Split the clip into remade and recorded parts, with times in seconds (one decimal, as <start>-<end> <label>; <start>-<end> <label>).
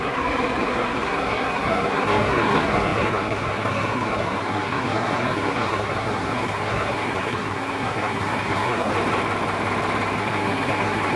0.0-8.9 remade; 8.9-10.2 recorded; 10.2-11.2 remade